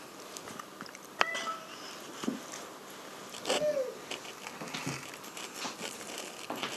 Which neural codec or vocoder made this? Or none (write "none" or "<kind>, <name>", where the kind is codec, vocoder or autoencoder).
none